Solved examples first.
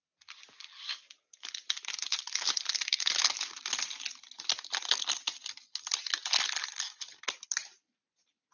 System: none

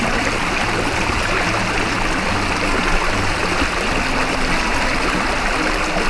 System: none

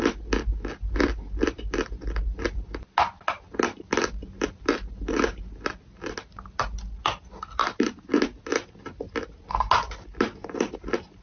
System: none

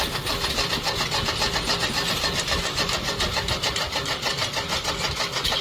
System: none